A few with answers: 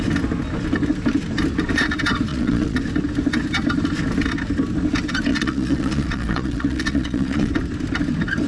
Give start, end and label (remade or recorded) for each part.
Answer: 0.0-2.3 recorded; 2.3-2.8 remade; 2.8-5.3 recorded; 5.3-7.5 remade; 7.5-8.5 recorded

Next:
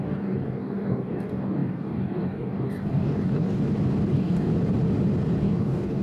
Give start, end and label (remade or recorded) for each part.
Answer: 0.0-3.6 remade; 3.6-4.1 recorded; 4.1-4.5 remade; 4.5-5.4 recorded; 5.4-6.0 remade

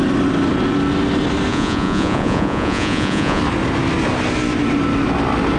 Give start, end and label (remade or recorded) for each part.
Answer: 0.0-1.5 recorded; 1.5-3.4 remade; 3.4-5.6 recorded

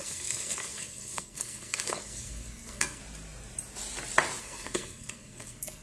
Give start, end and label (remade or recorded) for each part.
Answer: 0.0-3.0 remade; 3.0-4.4 recorded; 4.4-5.8 remade